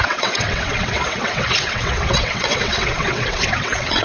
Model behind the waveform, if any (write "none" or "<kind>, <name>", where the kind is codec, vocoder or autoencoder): vocoder, WaveNeXt